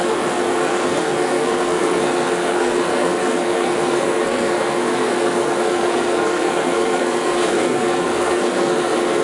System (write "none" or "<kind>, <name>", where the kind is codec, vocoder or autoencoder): codec, SNAC